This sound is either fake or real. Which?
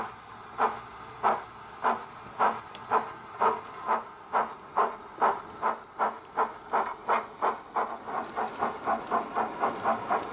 real